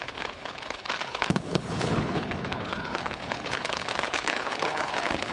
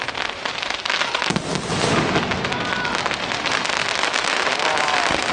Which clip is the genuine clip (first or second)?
second